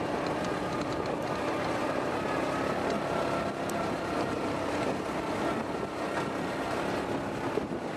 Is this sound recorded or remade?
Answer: recorded